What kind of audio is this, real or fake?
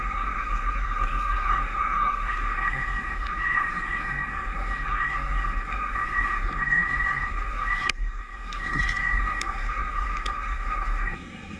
fake